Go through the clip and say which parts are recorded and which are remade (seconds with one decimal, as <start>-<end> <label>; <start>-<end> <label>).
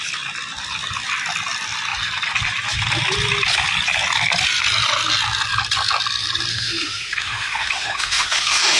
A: 0.0-6.5 recorded; 6.5-8.8 remade